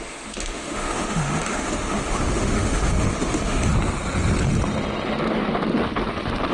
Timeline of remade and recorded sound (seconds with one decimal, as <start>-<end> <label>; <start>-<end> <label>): 0.0-3.7 remade; 3.7-6.5 recorded